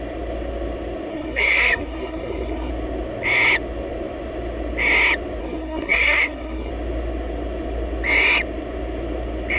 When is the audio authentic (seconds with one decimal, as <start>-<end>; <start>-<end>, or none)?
0.0-1.1; 2.7-5.4; 6.7-9.6